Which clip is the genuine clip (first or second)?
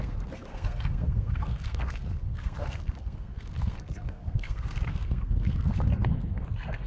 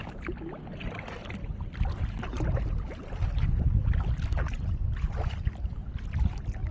second